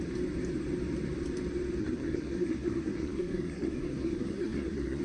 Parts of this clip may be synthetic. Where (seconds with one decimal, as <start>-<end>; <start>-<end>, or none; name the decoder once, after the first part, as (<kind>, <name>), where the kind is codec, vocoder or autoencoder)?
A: 1.8-5.0 (codec, SNAC)